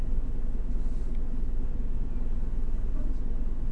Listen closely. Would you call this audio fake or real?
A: real